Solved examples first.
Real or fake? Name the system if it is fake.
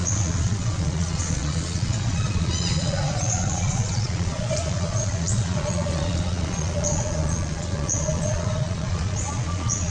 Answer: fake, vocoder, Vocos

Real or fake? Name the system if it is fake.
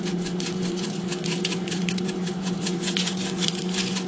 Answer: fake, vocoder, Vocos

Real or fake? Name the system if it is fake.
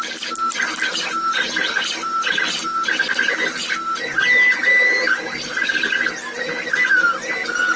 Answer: real